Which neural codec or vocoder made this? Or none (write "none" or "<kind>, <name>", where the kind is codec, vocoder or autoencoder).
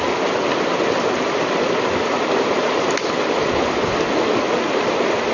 none